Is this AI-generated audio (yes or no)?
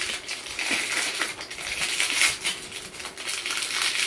no